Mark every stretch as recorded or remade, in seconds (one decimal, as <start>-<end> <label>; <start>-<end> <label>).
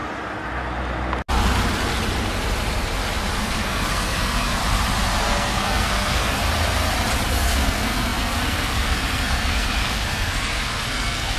0.0-3.4 recorded; 3.4-4.6 remade; 4.6-5.2 recorded; 5.2-6.4 remade; 6.4-7.3 recorded; 7.3-11.4 remade